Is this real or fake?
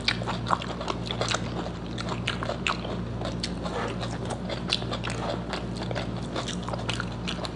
real